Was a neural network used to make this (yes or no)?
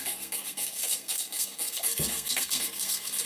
yes